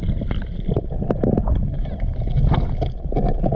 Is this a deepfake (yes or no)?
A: no